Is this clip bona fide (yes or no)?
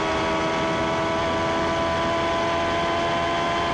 yes